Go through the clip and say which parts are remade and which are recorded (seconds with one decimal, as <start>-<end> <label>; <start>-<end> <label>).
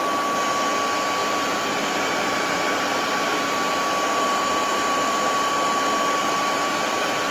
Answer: 0.0-1.2 recorded; 1.2-5.5 remade; 5.5-6.2 recorded; 6.2-7.3 remade